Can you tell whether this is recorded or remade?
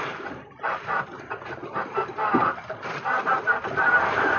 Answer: recorded